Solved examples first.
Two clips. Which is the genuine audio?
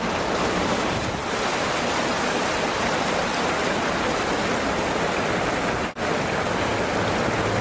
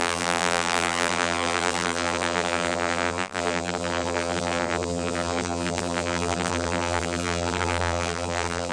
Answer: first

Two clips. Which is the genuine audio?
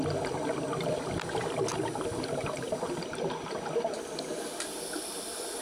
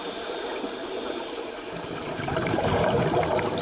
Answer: first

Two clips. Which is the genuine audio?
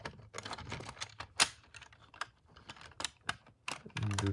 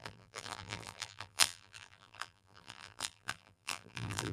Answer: first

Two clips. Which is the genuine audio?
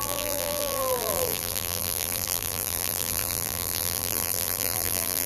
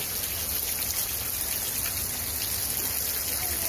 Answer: second